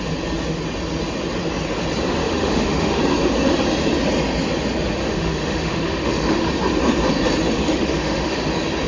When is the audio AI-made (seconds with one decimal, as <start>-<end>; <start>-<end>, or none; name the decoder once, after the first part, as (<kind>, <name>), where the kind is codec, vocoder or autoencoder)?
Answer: 2.2-3.0 (autoencoder, DAC-VAE); 5.0-6.5; 7.6-8.4